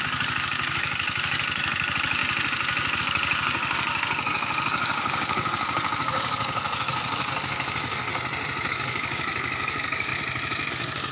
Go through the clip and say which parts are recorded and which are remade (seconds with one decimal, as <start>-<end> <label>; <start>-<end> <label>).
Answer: 0.0-2.2 remade; 2.2-3.0 recorded; 3.0-8.1 remade; 8.1-8.7 recorded; 8.7-10.1 remade; 10.1-10.7 recorded; 10.7-11.1 remade